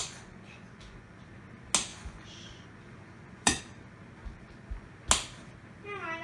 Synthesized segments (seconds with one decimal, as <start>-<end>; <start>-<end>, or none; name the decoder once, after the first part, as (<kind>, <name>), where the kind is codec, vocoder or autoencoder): 0.0-1.2 (vocoder, Vocos); 1.9-3.6; 4.2-4.9